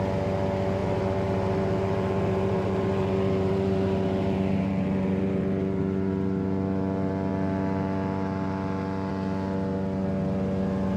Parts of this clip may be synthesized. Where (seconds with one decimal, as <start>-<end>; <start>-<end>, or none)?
0.8-5.8